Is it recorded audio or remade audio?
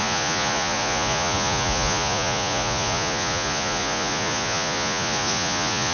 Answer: remade